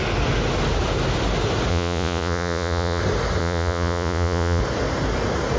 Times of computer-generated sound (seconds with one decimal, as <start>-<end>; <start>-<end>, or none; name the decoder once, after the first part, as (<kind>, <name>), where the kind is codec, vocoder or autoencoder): 1.7-3.0 (vocoder, Vocos); 3.4-4.6